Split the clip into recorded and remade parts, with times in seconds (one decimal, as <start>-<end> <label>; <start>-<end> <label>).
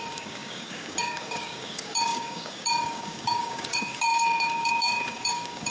0.0-5.7 remade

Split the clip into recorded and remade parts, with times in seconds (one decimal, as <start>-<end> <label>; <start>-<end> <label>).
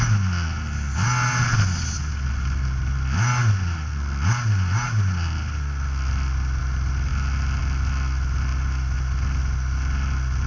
0.0-10.5 recorded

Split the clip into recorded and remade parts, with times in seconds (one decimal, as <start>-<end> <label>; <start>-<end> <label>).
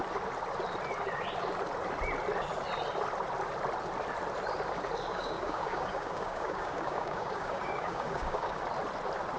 0.0-5.1 recorded; 5.1-8.6 remade; 8.6-9.4 recorded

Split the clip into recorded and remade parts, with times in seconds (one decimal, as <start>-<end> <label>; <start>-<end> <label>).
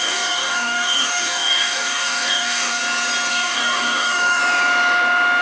0.0-2.8 remade; 2.8-3.3 recorded; 3.3-4.4 remade; 4.4-5.4 recorded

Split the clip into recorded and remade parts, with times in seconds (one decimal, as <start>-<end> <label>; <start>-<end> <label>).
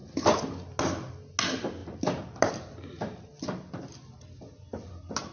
0.0-5.3 recorded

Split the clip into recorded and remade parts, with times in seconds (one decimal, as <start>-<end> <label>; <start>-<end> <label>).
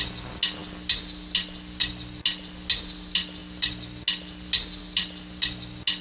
0.0-6.0 recorded